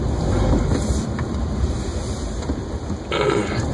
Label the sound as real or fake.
real